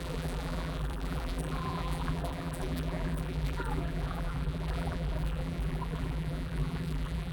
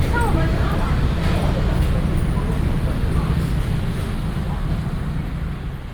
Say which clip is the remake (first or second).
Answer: first